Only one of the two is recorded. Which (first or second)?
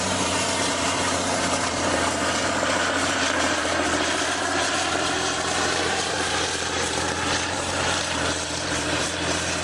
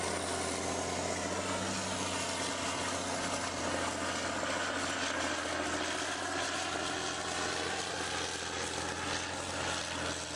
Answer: second